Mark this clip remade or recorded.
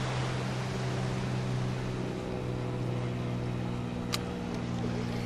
recorded